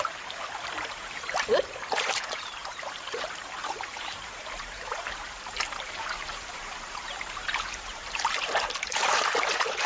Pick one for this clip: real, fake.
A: fake